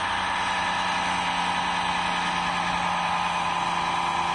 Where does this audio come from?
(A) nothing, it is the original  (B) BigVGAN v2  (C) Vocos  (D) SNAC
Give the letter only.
A